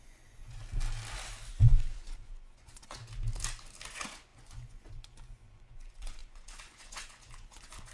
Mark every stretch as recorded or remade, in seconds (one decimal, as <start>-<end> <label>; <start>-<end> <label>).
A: 0.0-0.6 remade; 0.6-1.5 recorded; 1.5-3.0 remade; 3.0-3.9 recorded; 3.9-7.9 remade